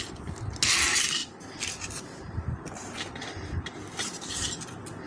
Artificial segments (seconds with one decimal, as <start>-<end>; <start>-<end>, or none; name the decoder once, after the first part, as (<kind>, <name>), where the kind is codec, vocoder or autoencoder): none